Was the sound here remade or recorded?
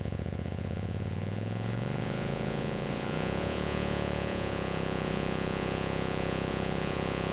remade